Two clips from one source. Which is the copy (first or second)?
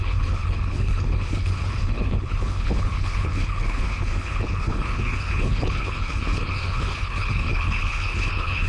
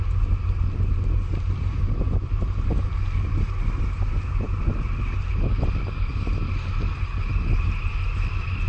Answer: first